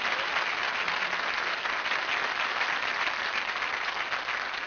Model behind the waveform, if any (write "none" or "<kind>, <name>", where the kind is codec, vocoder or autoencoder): none